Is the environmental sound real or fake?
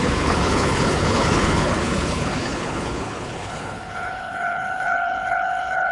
fake